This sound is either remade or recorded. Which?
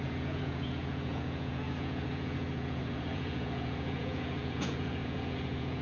remade